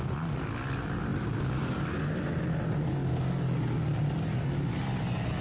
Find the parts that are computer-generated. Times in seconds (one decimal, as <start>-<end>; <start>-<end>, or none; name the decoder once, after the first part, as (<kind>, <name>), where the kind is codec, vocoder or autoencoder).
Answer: none